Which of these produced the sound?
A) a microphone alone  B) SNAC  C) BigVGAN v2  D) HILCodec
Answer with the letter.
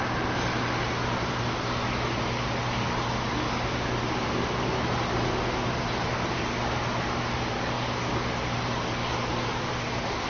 A